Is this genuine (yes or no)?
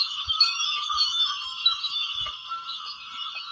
no